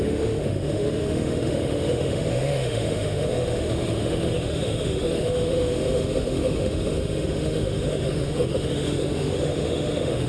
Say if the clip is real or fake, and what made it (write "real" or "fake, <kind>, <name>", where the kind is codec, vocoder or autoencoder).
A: fake, autoencoder, DAC-VAE